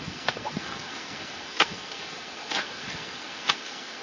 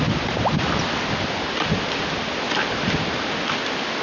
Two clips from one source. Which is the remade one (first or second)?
first